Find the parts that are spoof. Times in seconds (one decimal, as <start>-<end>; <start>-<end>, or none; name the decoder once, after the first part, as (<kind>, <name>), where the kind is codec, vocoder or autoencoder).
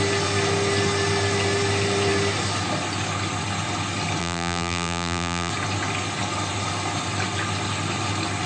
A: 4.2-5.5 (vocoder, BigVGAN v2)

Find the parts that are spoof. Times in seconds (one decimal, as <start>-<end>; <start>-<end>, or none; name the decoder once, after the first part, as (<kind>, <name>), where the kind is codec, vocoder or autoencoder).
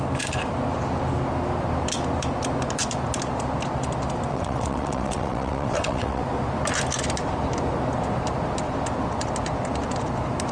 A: 4.3-6.2 (vocoder, WaveNeXt)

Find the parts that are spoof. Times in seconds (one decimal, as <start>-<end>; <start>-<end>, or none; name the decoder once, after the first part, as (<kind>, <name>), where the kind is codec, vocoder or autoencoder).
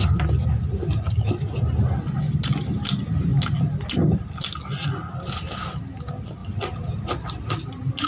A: none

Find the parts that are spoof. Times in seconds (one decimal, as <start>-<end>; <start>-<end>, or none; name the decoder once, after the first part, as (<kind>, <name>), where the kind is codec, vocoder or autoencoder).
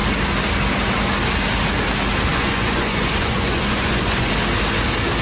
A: 2.3-4.3 (vocoder, Vocos)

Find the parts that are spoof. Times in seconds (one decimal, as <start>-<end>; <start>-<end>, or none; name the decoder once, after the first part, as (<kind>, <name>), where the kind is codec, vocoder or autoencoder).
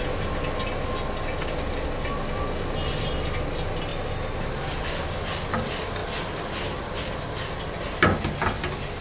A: none